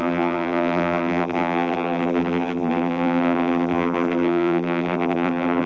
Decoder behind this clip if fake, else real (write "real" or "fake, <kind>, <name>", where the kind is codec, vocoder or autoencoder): fake, vocoder, BigVGAN v2